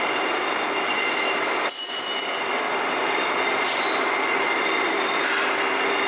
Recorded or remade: recorded